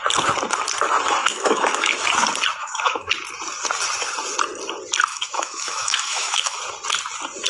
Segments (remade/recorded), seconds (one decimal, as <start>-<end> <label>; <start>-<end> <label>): 0.0-1.2 recorded; 1.2-1.9 remade; 1.9-2.6 recorded; 2.6-3.1 remade; 3.1-5.1 recorded; 5.1-6.6 remade; 6.6-7.5 recorded